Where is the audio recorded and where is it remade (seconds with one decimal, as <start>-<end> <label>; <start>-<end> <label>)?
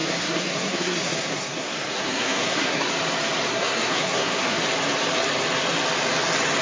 0.0-2.9 remade; 2.9-3.5 recorded; 3.5-4.6 remade; 4.6-6.6 recorded